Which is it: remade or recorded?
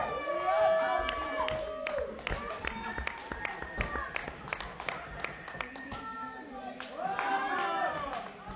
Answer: recorded